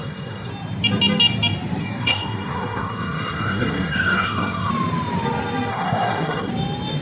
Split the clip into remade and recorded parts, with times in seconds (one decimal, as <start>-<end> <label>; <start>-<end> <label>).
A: 0.0-0.5 remade; 0.5-1.8 recorded; 1.8-4.7 remade; 4.7-5.7 recorded; 5.7-6.5 remade; 6.5-7.0 recorded